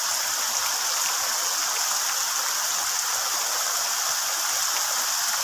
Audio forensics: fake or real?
real